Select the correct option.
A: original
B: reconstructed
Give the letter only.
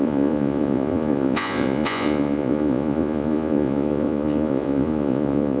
B